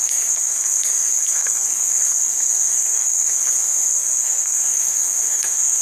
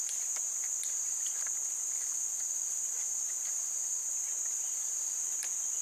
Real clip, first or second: second